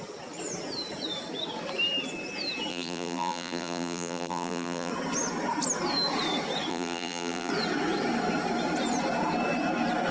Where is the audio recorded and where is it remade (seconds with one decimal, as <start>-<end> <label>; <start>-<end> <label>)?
0.0-2.7 recorded; 2.7-4.9 remade; 4.9-6.7 recorded; 6.7-7.5 remade; 7.5-10.1 recorded